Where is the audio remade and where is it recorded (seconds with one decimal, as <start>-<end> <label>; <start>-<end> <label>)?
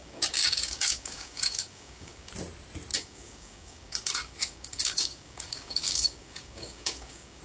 0.0-2.3 remade; 2.3-2.9 recorded; 2.9-7.4 remade